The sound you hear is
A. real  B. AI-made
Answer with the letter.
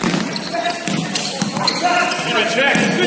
A